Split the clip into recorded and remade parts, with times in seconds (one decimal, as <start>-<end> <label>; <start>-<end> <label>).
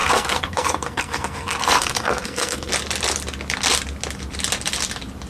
0.0-2.7 remade; 2.7-5.3 recorded